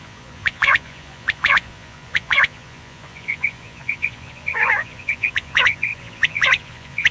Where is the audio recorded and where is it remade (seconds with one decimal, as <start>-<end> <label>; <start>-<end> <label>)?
0.0-7.1 remade